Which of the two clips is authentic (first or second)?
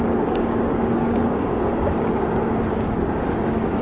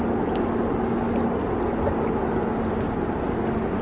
second